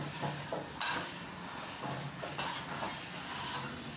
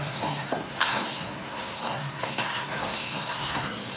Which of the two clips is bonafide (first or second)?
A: first